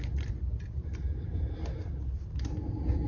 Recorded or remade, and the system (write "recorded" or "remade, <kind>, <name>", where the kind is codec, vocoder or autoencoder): recorded